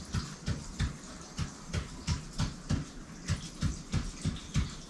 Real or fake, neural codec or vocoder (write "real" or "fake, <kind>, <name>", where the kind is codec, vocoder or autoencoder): real